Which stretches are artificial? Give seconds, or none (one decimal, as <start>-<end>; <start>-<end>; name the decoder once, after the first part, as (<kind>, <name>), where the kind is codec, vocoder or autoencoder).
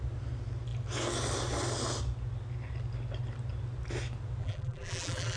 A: 4.4-5.4 (vocoder, BigVGAN v2)